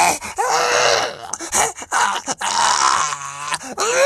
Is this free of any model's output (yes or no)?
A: yes